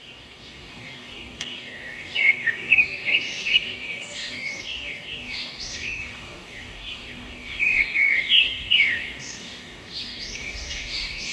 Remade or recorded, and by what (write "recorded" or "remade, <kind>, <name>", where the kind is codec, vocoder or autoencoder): remade, codec, DAC